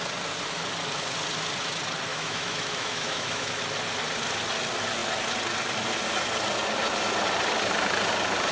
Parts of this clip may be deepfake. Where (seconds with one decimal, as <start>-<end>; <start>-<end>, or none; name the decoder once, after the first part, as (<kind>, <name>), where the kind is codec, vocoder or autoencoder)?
2.1-3.6 (autoencoder, DAC-VAE)